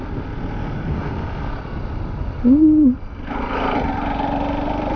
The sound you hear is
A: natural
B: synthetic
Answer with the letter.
A